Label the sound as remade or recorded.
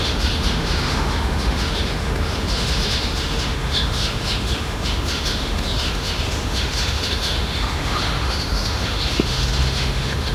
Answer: remade